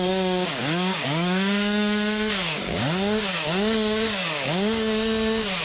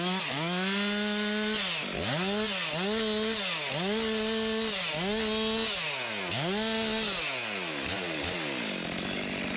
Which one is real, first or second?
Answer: second